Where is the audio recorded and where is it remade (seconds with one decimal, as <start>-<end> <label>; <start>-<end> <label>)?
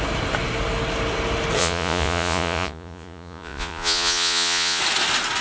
0.0-1.6 recorded; 1.6-4.8 remade; 4.8-5.4 recorded